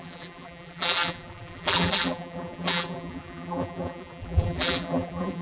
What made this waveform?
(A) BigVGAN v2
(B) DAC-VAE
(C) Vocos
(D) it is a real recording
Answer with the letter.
A